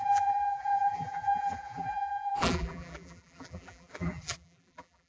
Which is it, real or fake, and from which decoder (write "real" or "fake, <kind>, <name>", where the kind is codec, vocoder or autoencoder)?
fake, vocoder, BigVGAN v2